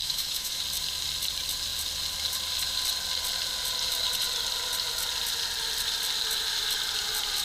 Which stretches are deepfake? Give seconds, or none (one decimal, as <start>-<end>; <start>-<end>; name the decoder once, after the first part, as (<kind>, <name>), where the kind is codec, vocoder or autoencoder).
0.0-0.6 (autoencoder, DAC-VAE)